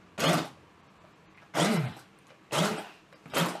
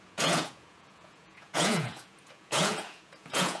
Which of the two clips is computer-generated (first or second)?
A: second